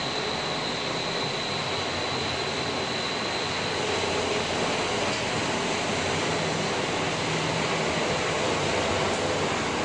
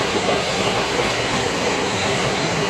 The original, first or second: first